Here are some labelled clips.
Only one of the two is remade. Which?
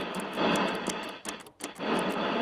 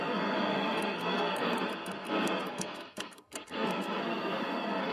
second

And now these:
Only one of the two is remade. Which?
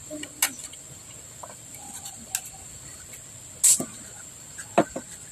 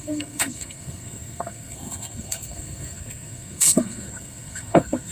second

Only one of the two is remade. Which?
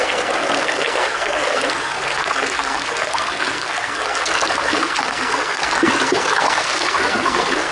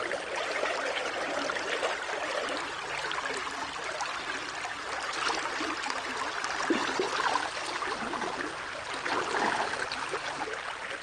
first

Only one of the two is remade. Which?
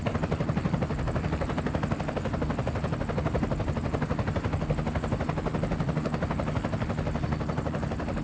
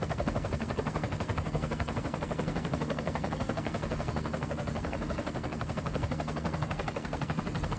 second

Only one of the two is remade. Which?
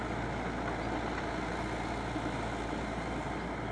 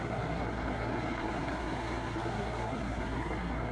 second